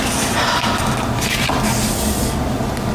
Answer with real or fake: real